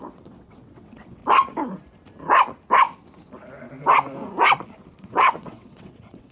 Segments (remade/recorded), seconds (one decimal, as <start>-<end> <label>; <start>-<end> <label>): 0.0-1.2 remade; 1.2-5.0 recorded; 5.0-6.3 remade